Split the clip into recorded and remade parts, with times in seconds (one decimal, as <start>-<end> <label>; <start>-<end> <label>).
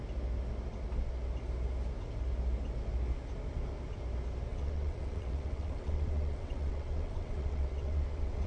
0.0-4.5 recorded; 4.5-8.5 remade